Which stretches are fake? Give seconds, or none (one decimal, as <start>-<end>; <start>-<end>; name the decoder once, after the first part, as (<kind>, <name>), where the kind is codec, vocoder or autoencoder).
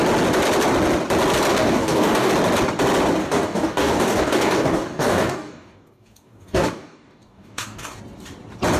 1.5-2.3 (codec, DAC); 3.2-8.0